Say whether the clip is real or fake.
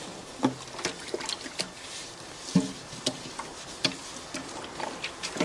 real